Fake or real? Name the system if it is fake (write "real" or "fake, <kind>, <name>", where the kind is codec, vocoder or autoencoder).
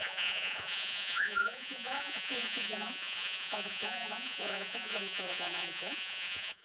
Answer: fake, vocoder, Vocos